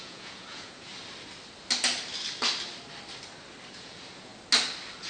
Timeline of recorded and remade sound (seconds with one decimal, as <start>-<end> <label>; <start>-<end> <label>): 0.0-0.9 remade; 0.9-3.8 recorded; 3.8-4.3 remade; 4.3-5.1 recorded

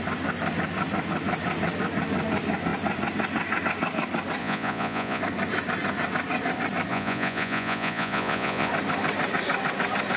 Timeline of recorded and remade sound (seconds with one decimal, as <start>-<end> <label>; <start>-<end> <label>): 0.0-4.4 recorded; 4.4-5.2 remade; 5.2-6.9 recorded; 6.9-8.7 remade; 8.7-10.2 recorded

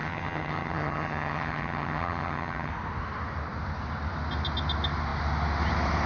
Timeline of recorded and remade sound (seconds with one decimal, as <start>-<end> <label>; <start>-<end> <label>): 0.0-2.7 remade; 2.7-6.1 recorded

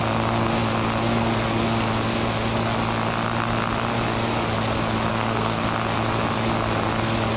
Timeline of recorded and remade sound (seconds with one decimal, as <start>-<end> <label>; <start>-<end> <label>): 0.0-5.1 recorded; 5.1-5.6 remade; 5.6-7.4 recorded